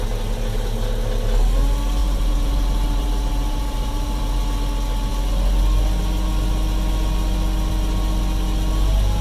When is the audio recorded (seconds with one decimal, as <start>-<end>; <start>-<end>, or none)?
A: 0.0-2.0; 4.4-9.2